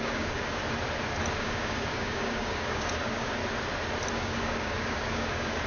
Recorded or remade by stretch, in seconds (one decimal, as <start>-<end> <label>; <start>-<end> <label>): 0.0-0.6 remade; 0.6-1.4 recorded; 1.4-3.4 remade; 3.4-4.1 recorded; 4.1-5.7 remade